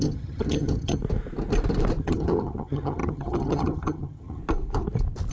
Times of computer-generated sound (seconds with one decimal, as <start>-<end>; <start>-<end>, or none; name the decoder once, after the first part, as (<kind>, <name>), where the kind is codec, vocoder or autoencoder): 0.0-1.0 (vocoder, HiFi-GAN); 2.0-4.4